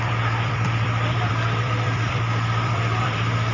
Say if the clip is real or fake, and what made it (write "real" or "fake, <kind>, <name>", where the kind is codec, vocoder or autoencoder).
fake, vocoder, BigVGAN v2